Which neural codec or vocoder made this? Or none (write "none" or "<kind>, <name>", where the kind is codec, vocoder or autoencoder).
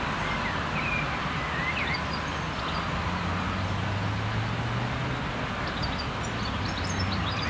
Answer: none